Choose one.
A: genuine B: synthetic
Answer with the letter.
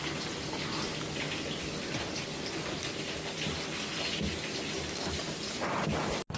A